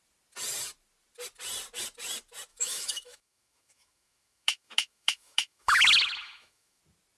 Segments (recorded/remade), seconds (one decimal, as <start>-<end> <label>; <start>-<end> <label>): 0.0-2.5 recorded; 2.5-6.8 remade; 6.8-7.2 recorded